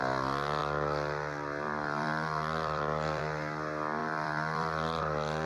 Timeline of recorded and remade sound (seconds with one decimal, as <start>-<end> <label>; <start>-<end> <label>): 0.0-0.6 recorded; 0.6-3.2 remade; 3.2-4.0 recorded; 4.0-5.0 remade; 5.0-5.5 recorded